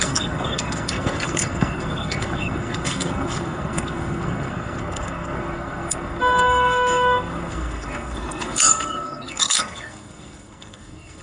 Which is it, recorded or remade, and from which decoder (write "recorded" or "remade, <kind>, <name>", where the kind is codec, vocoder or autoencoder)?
remade, codec, SNAC